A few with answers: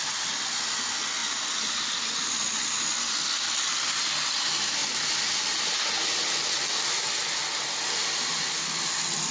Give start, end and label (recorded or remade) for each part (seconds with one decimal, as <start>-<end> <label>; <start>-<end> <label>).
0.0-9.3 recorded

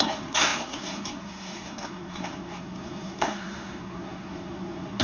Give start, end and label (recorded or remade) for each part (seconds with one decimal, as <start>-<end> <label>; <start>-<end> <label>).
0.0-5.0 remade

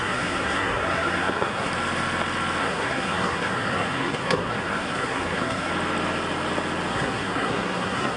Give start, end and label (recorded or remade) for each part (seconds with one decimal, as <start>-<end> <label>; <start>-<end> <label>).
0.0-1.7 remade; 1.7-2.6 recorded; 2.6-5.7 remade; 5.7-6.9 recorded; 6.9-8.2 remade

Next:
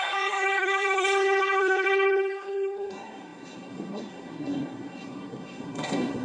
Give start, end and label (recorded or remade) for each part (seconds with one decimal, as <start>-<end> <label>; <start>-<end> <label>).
0.0-6.2 remade

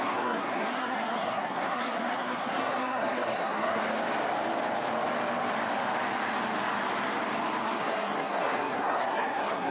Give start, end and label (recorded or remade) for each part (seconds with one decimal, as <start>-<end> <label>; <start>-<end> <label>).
0.0-3.8 remade; 3.8-7.6 recorded; 7.6-9.7 remade

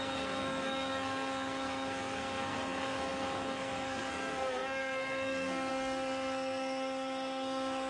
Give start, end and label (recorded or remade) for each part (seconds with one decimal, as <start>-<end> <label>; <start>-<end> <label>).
0.0-7.9 remade

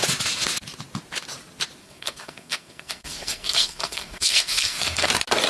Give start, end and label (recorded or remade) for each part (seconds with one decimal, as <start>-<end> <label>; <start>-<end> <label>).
0.0-1.8 recorded; 1.8-5.1 remade; 5.1-5.5 recorded